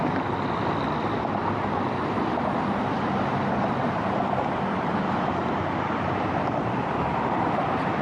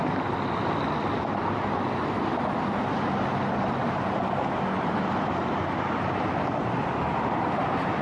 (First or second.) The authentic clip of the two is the second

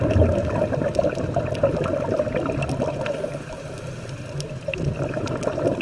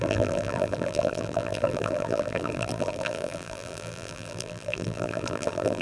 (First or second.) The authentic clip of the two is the first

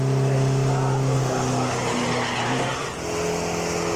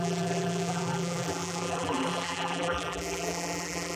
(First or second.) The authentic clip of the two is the first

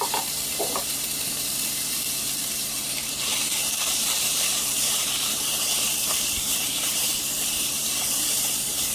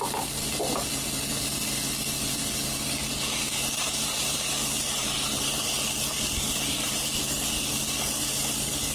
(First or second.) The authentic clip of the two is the second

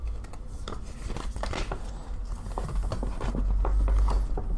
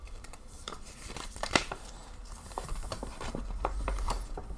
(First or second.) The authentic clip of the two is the first